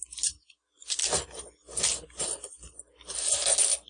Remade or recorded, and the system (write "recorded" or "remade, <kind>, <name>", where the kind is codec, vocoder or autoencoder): recorded